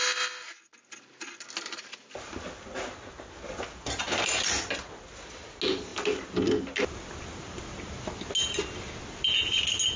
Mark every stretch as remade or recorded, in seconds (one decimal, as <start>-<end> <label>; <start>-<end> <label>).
0.0-10.0 recorded